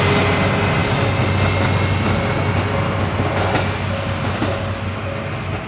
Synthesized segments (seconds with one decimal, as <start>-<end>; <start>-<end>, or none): none